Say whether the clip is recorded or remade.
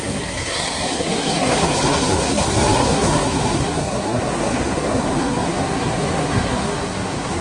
remade